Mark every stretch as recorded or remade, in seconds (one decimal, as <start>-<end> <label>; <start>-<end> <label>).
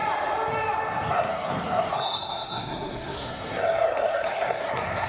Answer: 0.0-1.1 recorded; 1.1-5.1 remade